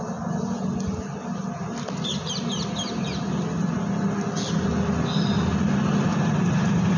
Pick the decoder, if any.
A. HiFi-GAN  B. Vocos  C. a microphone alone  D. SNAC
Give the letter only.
C